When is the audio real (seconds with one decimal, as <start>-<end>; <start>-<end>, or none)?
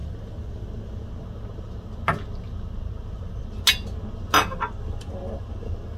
0.0-6.0